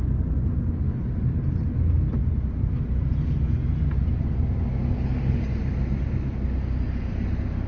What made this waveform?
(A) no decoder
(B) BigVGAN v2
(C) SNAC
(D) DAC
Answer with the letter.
A